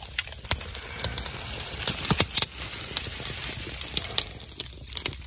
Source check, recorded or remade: recorded